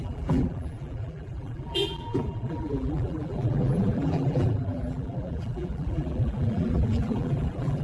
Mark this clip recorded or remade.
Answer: remade